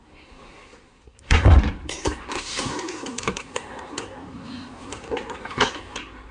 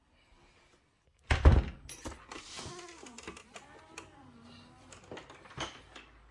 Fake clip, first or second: first